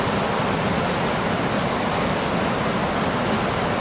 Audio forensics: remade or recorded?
recorded